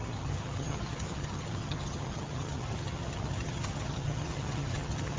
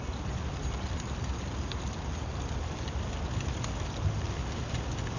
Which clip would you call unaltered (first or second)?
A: second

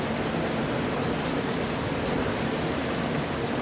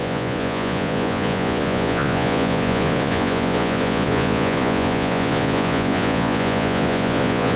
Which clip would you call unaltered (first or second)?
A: first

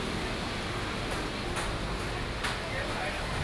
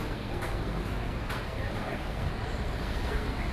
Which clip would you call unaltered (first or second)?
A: first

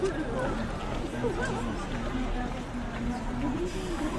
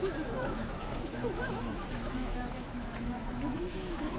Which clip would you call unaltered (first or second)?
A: first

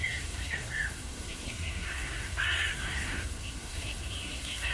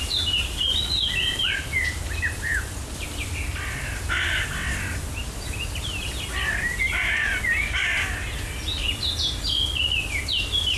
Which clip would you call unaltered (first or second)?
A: second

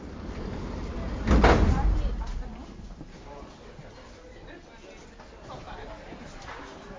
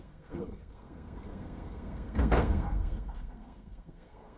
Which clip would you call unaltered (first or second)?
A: first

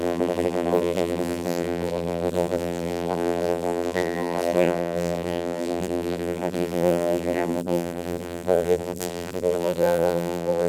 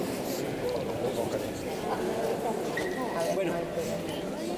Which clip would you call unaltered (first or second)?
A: second